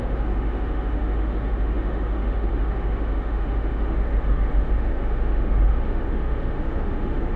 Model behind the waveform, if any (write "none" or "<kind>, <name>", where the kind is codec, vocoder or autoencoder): autoencoder, DAC-VAE